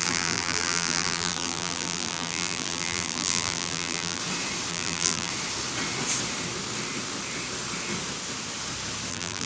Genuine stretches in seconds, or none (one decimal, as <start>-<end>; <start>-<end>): 4.2-4.7; 5.3-9.1